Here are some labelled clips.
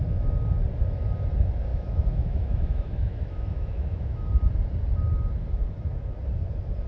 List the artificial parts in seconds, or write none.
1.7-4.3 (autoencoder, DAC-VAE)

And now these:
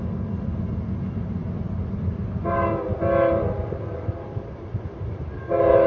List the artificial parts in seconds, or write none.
none

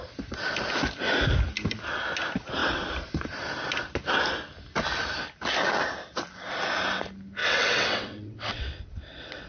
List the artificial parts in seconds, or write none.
7.4-9.5 (vocoder, WaveNeXt)

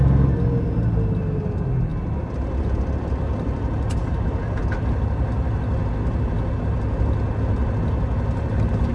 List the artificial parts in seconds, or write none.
none

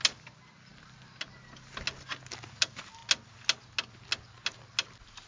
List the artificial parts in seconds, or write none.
none

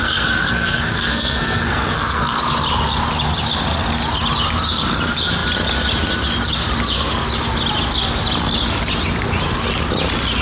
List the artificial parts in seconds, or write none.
0.0-2.4 (codec, SNAC)